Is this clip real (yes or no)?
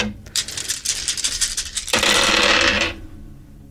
no